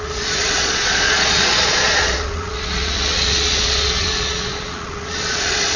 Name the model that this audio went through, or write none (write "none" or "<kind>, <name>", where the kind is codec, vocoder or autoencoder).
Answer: vocoder, Vocos